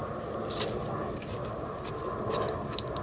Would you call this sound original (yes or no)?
yes